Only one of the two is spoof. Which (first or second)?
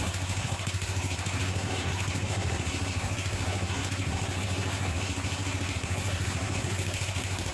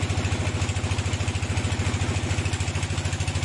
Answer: first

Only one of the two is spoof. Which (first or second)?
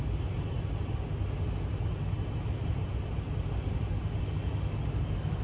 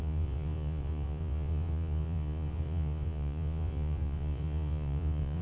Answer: second